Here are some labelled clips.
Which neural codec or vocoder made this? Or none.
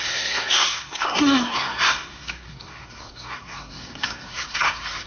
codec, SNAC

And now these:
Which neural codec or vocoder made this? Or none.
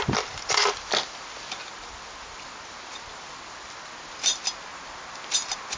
none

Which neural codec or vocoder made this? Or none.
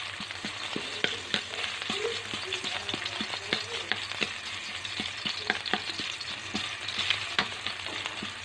none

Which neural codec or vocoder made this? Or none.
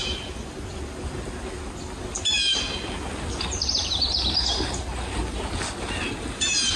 none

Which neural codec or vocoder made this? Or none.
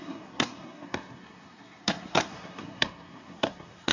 codec, SNAC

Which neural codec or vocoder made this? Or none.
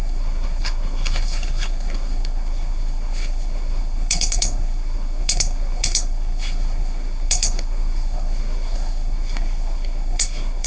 codec, SNAC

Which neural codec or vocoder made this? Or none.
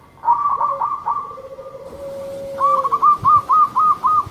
none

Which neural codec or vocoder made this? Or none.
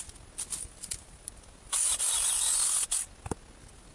none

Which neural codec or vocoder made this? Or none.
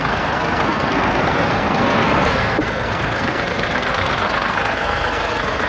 codec, SNAC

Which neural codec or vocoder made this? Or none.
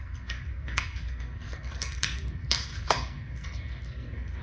codec, SNAC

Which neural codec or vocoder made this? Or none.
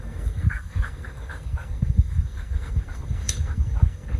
codec, SNAC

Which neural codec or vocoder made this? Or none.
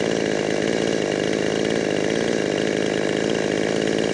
none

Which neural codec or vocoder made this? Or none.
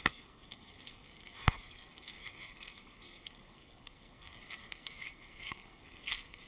codec, SNAC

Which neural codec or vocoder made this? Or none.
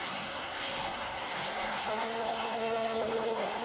codec, SNAC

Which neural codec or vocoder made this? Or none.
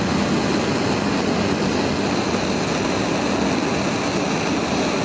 none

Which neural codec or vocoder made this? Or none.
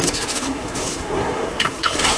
codec, SNAC